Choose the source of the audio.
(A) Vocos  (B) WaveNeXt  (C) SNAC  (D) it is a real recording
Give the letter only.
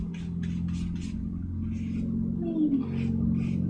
D